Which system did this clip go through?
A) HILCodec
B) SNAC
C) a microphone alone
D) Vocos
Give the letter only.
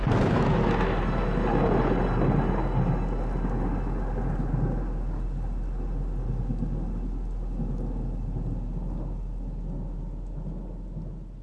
C